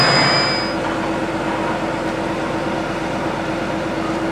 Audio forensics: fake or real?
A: real